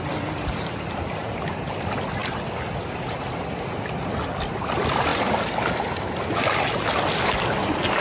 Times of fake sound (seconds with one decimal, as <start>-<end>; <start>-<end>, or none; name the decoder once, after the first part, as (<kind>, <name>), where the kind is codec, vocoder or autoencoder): none